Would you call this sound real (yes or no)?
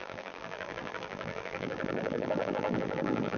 no